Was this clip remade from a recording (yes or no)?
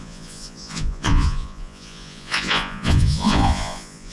yes